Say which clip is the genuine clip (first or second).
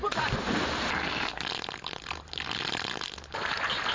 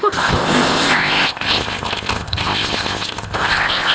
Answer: first